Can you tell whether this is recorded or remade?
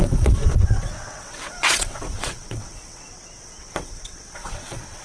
remade